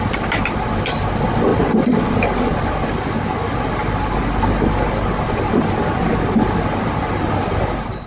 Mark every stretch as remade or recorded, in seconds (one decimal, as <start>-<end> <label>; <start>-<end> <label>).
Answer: 0.0-8.1 recorded

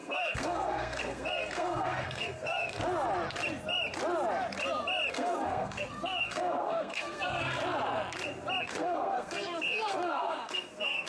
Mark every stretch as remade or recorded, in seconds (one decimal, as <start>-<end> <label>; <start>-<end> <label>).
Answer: 0.0-2.8 remade; 2.8-5.1 recorded; 5.1-7.6 remade; 7.6-8.6 recorded; 8.6-11.1 remade

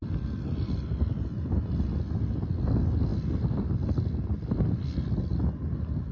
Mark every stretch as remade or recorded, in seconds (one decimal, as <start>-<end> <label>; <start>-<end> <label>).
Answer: 0.0-6.1 recorded